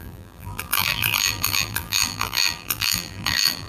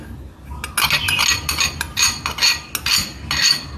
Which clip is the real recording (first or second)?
second